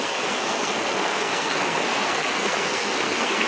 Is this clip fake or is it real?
fake